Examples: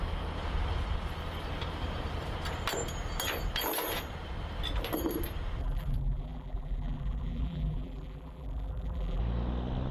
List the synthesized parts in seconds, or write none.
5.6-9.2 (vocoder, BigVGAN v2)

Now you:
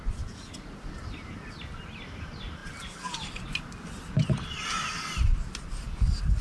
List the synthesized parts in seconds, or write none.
none

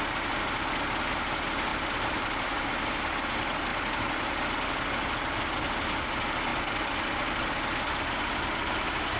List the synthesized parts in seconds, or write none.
1.7-2.6 (vocoder, BigVGAN v2); 3.7-4.3; 6.5-7.5

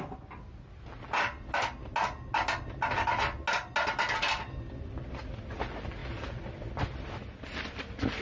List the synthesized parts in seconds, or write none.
none

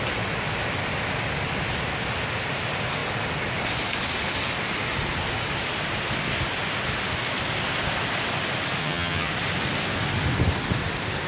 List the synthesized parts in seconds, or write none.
8.8-9.3 (vocoder, HiFi-GAN)